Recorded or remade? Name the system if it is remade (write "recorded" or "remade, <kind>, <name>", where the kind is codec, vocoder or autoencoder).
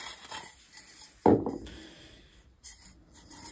recorded